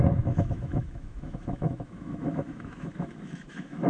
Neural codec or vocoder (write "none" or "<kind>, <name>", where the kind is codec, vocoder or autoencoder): autoencoder, DAC-VAE